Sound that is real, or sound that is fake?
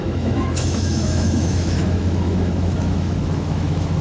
fake